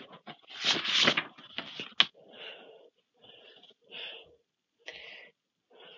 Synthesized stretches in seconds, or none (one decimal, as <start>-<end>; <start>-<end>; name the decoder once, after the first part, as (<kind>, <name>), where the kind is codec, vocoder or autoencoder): none